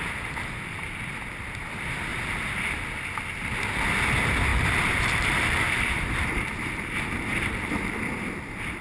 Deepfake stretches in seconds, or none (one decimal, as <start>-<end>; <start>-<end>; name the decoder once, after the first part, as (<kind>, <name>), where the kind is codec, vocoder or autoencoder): 4.5-7.6 (vocoder, BigVGAN v2)